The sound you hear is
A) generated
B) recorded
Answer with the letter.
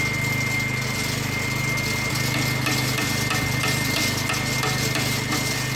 B